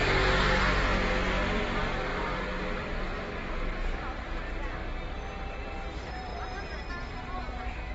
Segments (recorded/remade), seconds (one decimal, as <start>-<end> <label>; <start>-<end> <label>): 0.0-7.9 recorded